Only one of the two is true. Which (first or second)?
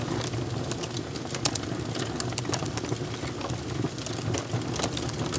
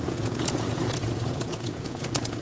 first